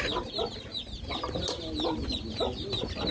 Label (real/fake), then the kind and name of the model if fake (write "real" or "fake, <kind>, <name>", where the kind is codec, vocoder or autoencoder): real